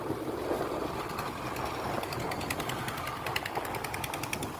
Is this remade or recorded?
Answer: recorded